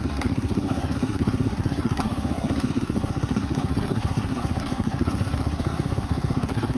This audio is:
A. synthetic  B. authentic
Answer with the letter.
A